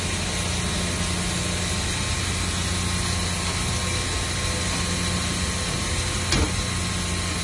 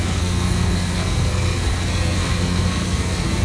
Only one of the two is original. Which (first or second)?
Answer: first